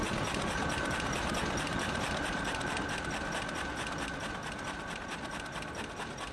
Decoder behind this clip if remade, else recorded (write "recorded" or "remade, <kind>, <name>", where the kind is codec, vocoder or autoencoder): recorded